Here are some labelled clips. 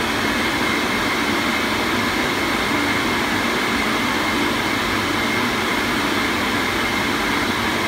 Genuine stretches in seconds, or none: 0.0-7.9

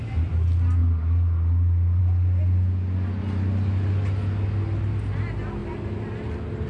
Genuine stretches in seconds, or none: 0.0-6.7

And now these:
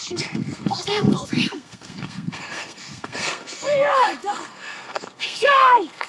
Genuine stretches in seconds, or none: none

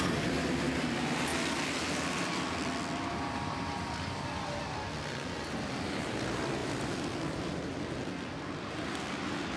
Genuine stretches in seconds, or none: 0.0-9.6